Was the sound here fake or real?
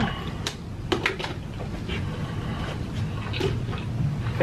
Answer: real